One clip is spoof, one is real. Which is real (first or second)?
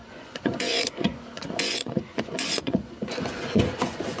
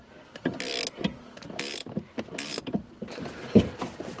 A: second